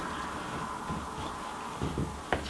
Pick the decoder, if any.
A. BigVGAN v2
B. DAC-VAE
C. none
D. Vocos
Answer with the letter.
C